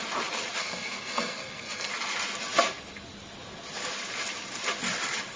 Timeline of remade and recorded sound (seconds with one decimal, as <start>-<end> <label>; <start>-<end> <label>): 0.0-0.6 recorded; 0.6-1.9 remade; 1.9-5.4 recorded